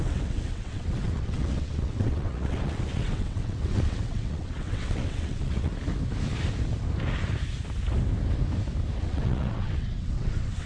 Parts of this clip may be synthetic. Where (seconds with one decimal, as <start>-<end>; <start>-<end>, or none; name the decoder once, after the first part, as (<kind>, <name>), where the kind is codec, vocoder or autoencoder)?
0.0-5.7 (vocoder, WaveNeXt); 9.0-10.7